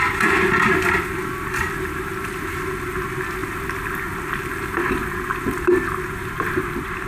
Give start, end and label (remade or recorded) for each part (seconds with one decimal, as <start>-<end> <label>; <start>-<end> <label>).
0.0-7.1 recorded